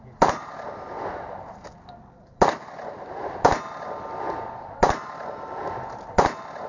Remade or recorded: recorded